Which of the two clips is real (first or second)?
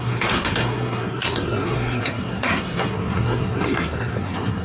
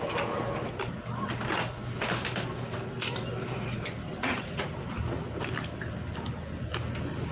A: second